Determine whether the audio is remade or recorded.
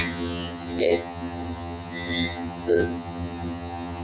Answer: remade